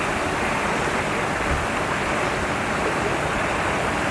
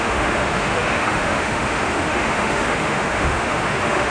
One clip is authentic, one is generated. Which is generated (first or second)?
second